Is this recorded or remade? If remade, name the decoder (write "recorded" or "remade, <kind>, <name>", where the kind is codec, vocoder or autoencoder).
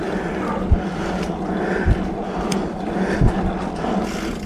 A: recorded